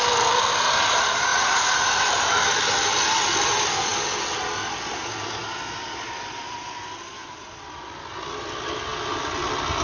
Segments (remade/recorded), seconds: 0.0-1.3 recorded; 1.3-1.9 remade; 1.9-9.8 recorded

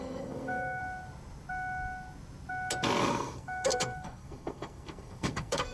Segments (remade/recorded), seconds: 0.0-0.8 remade; 0.8-3.1 recorded; 3.1-5.7 remade